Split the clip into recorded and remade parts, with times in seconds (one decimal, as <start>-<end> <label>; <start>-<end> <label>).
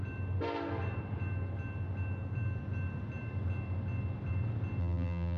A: 0.0-4.8 recorded; 4.8-5.4 remade